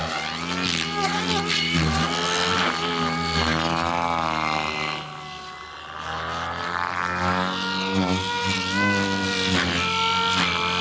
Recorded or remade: recorded